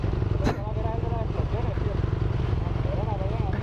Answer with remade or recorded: recorded